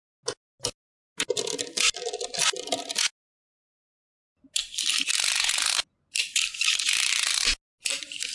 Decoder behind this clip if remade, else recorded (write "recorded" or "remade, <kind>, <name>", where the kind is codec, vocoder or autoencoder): recorded